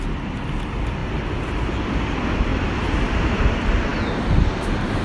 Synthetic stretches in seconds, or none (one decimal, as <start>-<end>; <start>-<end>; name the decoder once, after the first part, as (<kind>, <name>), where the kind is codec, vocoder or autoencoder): 1.0-1.9 (vocoder, BigVGAN v2)